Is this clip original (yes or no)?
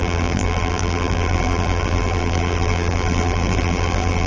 no